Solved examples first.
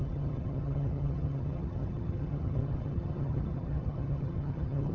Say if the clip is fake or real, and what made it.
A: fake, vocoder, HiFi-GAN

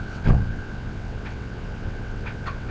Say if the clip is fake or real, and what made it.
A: fake, vocoder, WaveNeXt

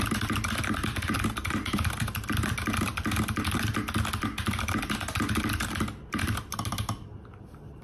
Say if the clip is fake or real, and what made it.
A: fake, vocoder, BigVGAN v2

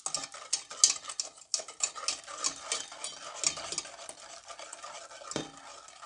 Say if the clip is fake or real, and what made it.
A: real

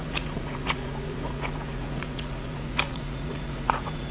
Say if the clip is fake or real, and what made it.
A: fake, vocoder, Vocos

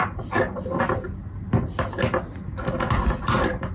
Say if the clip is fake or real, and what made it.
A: real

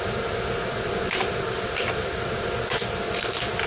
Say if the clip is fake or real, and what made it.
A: real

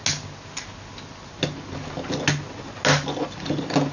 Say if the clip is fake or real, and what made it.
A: real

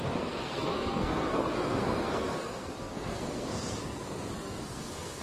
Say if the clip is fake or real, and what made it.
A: fake, codec, SNAC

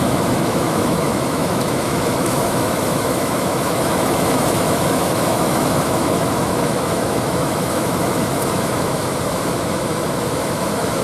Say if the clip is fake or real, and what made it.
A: fake, autoencoder, DAC-VAE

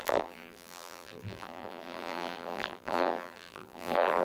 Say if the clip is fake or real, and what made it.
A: fake, vocoder, BigVGAN v2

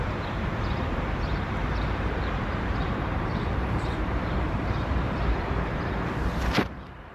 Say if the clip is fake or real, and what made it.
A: fake, vocoder, BigVGAN v2